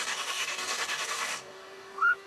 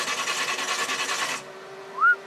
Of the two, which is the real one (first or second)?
second